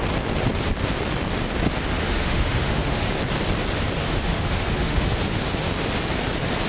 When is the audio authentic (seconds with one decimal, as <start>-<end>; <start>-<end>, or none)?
0.0-2.0; 3.1-4.0; 5.1-6.7